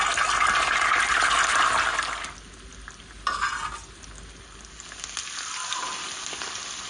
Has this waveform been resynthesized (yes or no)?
no